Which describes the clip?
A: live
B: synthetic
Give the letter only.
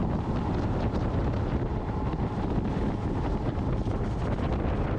A